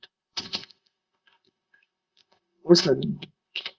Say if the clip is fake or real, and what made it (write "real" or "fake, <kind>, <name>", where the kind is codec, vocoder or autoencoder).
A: fake, codec, ZipCodec